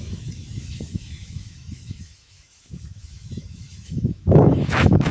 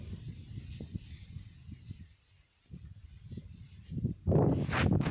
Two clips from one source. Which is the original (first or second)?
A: second